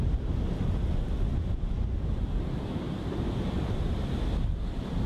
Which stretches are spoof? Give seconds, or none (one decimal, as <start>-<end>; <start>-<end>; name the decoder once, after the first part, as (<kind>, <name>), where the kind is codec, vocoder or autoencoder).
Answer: none